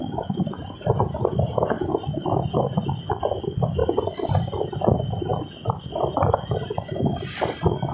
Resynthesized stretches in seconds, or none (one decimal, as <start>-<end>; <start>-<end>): 1.3-1.9